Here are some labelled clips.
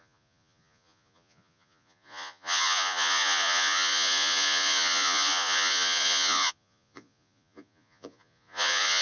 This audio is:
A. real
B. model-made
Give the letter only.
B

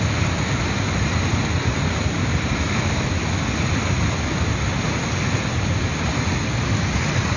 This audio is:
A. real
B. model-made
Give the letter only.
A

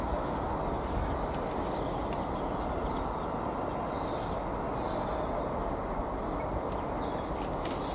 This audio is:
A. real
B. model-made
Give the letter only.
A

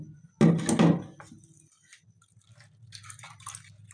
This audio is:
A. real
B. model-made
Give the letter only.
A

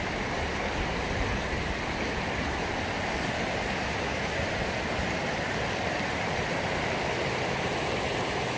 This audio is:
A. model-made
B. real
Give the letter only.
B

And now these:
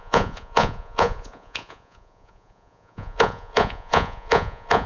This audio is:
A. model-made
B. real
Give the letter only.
A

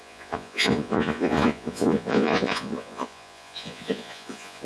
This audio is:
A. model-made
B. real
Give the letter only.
A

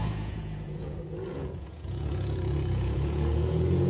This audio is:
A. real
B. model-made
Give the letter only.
B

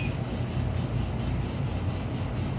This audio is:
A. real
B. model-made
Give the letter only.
A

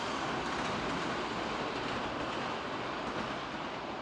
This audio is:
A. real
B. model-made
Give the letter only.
A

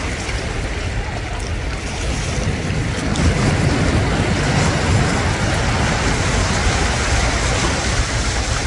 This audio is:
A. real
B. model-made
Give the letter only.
A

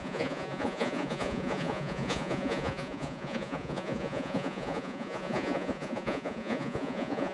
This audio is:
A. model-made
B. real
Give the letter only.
A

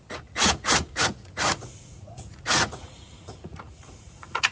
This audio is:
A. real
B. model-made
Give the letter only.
B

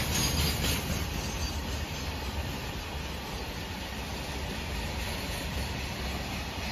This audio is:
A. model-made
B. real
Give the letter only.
B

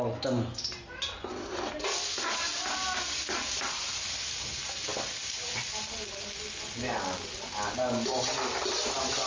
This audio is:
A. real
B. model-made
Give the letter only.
A